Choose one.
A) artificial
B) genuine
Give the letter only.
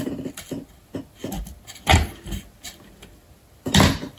B